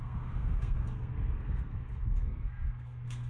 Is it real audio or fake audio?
fake